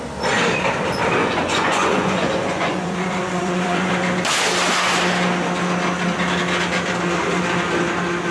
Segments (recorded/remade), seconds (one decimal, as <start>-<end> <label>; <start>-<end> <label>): 0.0-1.2 recorded; 1.2-3.9 remade; 3.9-8.3 recorded